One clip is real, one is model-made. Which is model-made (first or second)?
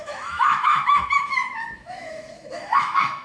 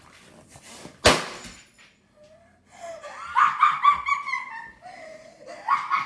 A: first